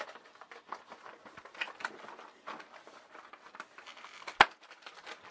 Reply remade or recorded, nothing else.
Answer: recorded